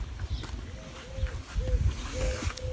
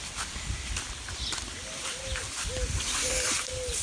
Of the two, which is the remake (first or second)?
second